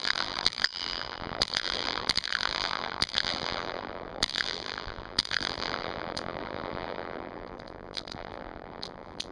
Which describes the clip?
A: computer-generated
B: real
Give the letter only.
A